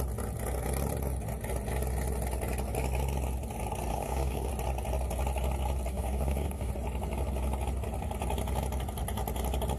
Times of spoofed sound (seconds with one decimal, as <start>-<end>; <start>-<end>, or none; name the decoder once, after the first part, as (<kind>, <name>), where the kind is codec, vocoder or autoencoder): 3.9-4.5 (codec, DAC); 5.9-6.7